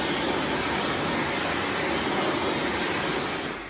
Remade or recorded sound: recorded